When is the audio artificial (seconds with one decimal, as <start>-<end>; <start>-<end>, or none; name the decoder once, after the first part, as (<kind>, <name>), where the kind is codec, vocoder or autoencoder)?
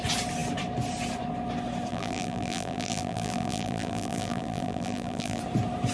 1.9-5.4 (vocoder, BigVGAN v2)